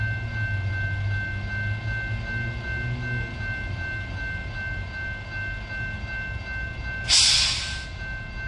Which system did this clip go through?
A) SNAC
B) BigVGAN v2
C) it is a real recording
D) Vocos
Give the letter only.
C